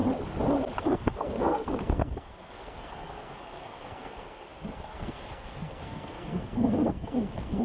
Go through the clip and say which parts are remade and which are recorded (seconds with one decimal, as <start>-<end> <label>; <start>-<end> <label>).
0.0-0.8 recorded; 0.8-7.6 remade